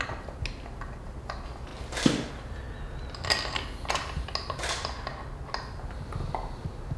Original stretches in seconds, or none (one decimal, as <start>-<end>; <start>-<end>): 0.0-7.0